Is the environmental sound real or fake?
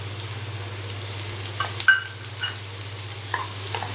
real